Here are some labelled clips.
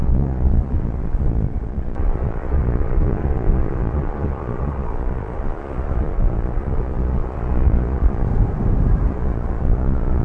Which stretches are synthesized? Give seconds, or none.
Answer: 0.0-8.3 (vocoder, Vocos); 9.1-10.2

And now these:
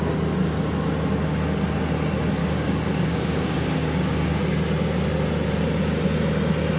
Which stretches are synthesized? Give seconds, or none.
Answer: 2.4-4.4 (codec, DAC)

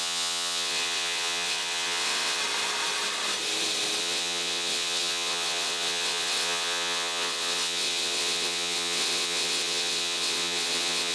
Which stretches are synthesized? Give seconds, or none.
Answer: 0.0-2.4 (vocoder, WaveNeXt); 4.0-11.1

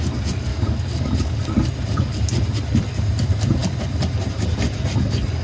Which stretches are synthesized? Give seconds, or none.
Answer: 0.5-1.5 (codec, DAC)